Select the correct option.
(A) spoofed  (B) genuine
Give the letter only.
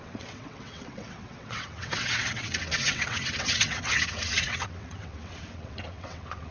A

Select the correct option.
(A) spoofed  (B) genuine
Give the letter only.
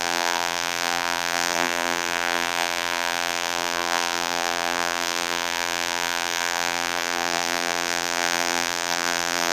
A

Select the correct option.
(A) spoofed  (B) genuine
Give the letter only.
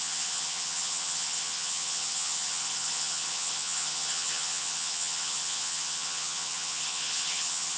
A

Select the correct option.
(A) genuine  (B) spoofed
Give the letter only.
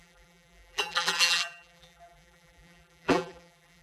B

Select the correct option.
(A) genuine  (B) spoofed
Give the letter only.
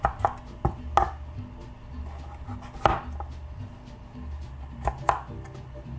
A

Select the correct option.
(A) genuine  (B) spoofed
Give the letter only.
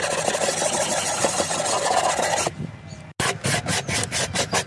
A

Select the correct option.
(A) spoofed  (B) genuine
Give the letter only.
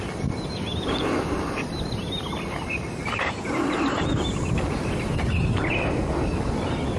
B